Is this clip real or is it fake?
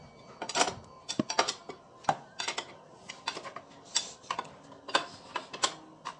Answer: real